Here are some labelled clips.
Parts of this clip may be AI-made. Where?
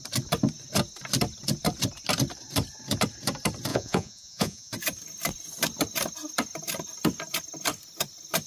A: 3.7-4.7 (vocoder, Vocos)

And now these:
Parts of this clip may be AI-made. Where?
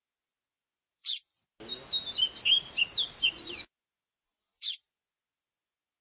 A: 0.0-1.3 (vocoder, Vocos); 3.2-6.0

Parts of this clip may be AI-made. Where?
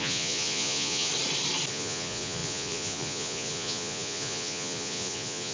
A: 0.0-1.1 (vocoder, Vocos); 1.7-5.5